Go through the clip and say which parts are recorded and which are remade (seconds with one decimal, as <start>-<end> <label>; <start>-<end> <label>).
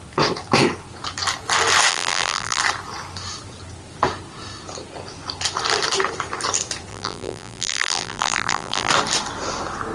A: 0.0-1.9 recorded; 1.9-2.6 remade; 2.6-6.9 recorded; 6.9-8.9 remade; 8.9-9.9 recorded